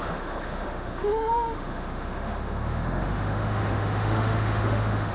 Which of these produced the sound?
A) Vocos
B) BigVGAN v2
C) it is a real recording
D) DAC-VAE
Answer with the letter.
D